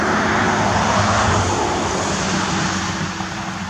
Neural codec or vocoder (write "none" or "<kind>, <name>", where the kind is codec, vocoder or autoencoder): none